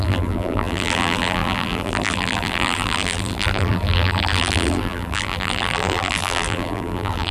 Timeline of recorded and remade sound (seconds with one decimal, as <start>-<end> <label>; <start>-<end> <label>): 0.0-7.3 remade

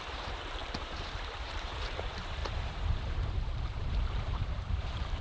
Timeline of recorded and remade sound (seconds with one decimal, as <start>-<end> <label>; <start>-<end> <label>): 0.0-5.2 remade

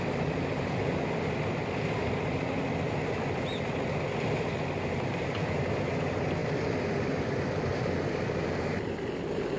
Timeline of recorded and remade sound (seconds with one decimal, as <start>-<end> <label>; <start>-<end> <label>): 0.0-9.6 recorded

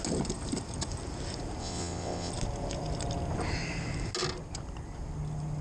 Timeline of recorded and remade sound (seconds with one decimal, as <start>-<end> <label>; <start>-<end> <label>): 0.0-1.6 recorded; 1.6-2.3 remade; 2.3-5.6 recorded